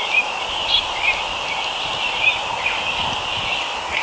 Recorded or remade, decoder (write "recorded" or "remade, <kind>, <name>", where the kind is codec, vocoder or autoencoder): recorded